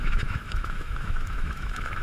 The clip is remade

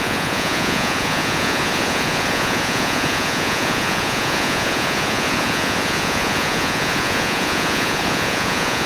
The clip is remade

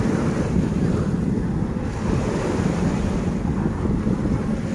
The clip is recorded